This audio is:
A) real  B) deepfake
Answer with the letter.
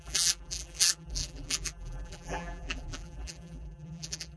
B